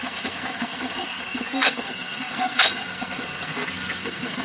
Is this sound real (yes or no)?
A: no